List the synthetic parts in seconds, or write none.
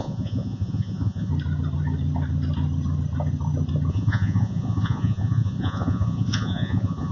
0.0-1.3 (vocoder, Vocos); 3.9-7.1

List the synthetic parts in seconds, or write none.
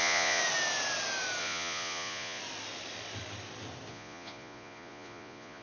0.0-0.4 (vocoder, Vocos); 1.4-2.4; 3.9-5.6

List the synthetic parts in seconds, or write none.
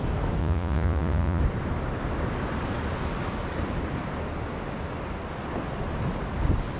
0.4-1.4 (vocoder, Vocos)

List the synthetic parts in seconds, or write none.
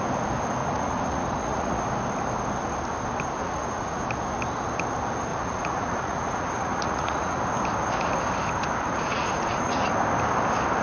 0.6-1.9 (vocoder, Vocos); 3.4-4.0; 5.3-7.4; 8.9-9.9